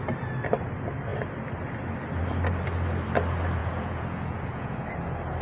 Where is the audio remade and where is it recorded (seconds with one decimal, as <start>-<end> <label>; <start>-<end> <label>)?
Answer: 0.0-3.6 recorded; 3.6-4.7 remade; 4.7-5.4 recorded